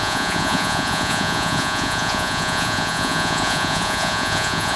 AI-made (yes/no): yes